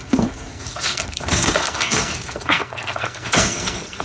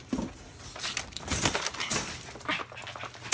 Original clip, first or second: second